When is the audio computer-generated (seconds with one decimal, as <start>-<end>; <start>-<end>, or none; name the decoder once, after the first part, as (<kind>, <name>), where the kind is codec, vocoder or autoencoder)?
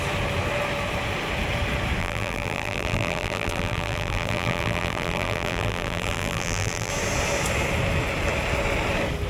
2.0-6.9 (vocoder, BigVGAN v2)